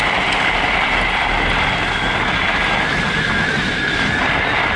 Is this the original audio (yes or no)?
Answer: yes